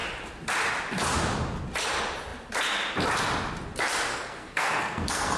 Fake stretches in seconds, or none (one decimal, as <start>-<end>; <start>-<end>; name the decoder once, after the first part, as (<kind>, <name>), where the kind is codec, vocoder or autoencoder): 4.1-5.4 (codec, SNAC)